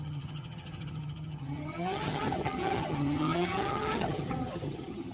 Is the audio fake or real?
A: fake